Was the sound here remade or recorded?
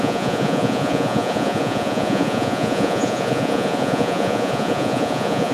remade